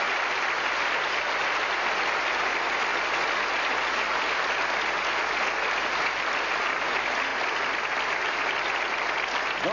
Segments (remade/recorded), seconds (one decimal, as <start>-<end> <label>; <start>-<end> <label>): 0.0-9.7 recorded